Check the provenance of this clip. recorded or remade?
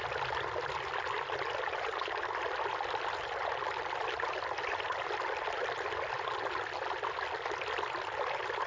recorded